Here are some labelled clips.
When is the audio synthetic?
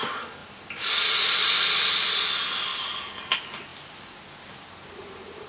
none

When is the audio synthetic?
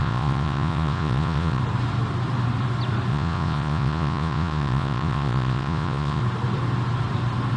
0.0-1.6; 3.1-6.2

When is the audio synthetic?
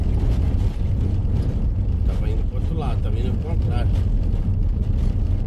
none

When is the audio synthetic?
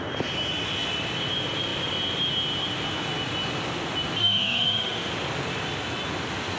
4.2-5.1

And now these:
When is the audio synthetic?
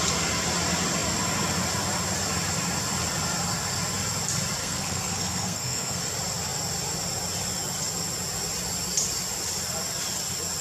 4.6-6.0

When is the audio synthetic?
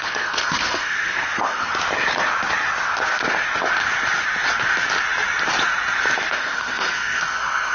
0.0-1.7; 6.3-7.7